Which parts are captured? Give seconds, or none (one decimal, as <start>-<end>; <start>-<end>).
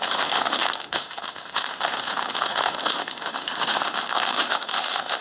none